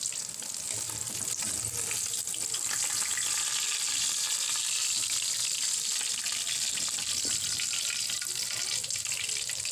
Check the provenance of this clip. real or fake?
real